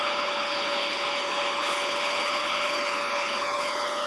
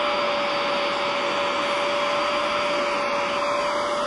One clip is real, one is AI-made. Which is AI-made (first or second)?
first